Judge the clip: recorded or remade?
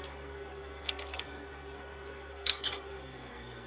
remade